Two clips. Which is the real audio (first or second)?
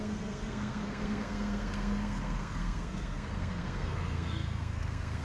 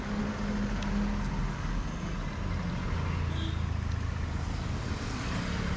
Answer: second